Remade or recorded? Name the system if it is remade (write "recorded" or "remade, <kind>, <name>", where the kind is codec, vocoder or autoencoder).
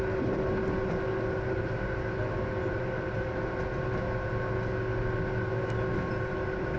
recorded